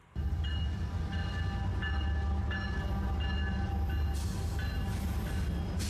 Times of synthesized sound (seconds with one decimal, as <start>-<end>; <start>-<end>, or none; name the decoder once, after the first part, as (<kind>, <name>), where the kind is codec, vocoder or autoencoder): none